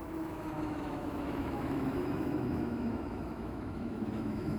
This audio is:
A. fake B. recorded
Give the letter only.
A